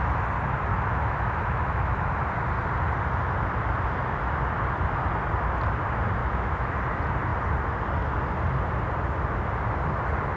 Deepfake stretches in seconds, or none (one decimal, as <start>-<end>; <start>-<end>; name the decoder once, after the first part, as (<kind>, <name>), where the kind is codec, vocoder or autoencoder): 0.7-2.1 (autoencoder, DAC-VAE); 6.2-6.7